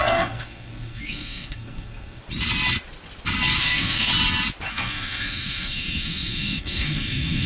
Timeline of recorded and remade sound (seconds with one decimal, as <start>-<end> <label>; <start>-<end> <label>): 0.0-2.2 remade; 2.2-3.6 recorded; 3.6-4.1 remade; 4.1-4.7 recorded; 4.7-7.5 remade